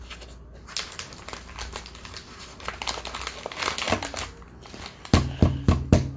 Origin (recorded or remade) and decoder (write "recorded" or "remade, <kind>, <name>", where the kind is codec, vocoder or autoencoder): recorded